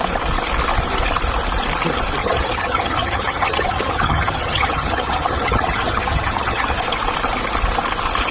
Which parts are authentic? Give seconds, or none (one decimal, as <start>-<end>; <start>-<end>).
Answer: 0.0-2.2; 6.8-8.3

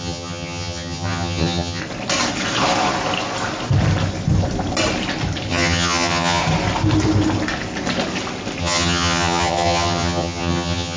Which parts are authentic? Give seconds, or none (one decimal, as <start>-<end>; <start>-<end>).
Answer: 1.8-5.5; 6.4-8.6

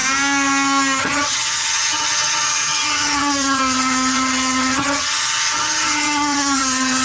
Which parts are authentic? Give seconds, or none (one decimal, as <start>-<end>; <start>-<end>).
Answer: 0.0-1.0

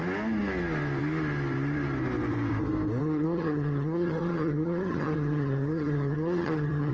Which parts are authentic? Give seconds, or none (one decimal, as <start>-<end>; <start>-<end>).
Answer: 0.0-3.0